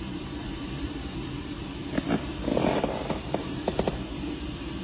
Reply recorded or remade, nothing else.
remade